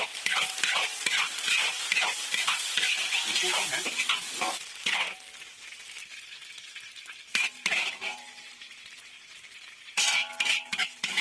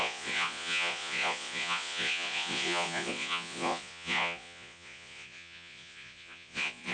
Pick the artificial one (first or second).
second